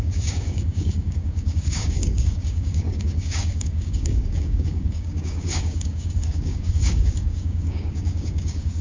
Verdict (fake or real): fake